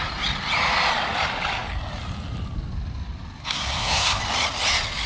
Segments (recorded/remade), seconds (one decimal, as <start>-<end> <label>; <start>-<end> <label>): 0.0-3.4 recorded; 3.4-4.2 remade; 4.2-5.1 recorded